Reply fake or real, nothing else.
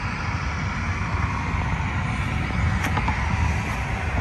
real